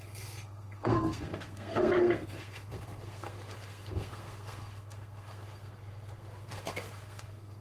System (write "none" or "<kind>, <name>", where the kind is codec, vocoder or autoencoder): codec, SNAC